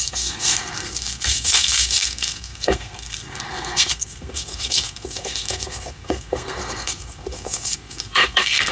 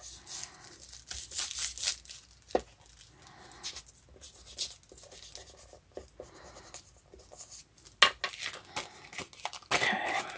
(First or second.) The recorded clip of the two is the second